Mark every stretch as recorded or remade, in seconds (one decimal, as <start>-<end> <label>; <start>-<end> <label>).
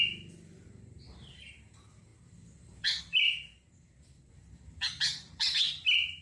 0.0-6.2 remade